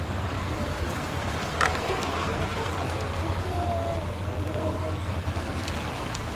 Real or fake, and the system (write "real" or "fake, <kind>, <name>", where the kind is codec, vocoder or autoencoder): fake, codec, SNAC